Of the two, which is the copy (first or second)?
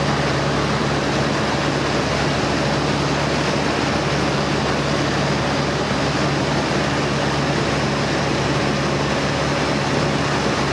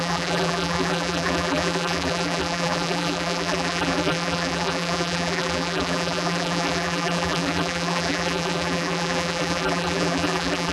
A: second